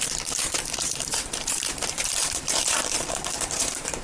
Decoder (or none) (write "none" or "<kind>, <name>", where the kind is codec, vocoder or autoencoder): vocoder, BigVGAN v2